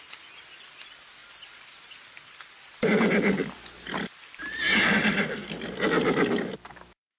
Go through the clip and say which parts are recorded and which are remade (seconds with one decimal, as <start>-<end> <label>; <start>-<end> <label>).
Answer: 0.0-1.2 recorded; 1.2-4.6 remade; 4.6-7.2 recorded

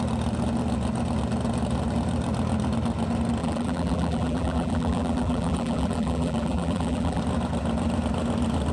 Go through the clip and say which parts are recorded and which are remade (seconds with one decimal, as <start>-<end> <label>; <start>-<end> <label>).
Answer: 0.0-3.4 recorded; 3.4-7.2 remade; 7.2-8.7 recorded

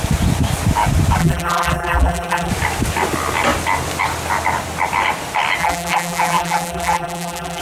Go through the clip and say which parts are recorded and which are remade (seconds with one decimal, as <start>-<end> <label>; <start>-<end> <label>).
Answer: 0.0-1.2 recorded; 1.2-2.5 remade; 2.5-5.6 recorded; 5.6-7.6 remade